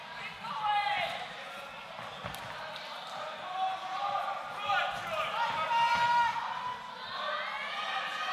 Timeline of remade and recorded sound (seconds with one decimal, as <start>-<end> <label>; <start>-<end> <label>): 0.0-2.6 remade; 2.6-8.3 recorded